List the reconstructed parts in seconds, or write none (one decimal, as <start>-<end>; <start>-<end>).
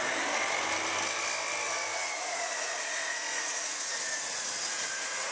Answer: 1.9-5.3